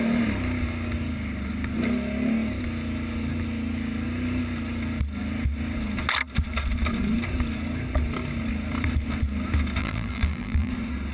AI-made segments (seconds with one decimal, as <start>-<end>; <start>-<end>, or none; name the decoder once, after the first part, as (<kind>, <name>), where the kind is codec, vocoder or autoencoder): 9.8-10.7 (vocoder, BigVGAN v2)

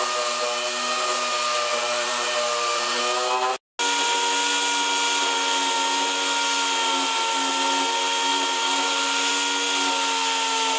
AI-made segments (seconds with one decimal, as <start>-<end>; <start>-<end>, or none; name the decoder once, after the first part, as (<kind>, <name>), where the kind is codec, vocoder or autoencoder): 1.7-3.0 (vocoder, BigVGAN v2); 8.3-9.3

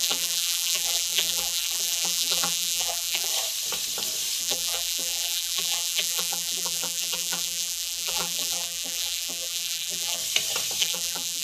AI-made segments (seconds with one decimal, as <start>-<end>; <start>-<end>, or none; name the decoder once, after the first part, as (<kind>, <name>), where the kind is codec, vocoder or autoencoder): 0.0-3.3 (vocoder, BigVGAN v2); 4.4-10.2; 10.8-11.4

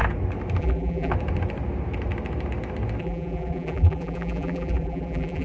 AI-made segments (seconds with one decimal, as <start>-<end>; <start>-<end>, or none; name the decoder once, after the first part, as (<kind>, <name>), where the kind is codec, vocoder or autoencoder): 0.6-1.1 (vocoder, BigVGAN v2); 3.0-5.4

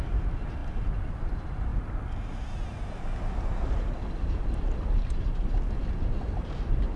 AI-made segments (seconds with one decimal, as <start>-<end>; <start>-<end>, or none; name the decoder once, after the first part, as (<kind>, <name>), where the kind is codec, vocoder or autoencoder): 0.0-1.7 (vocoder, BigVGAN v2); 5.9-7.0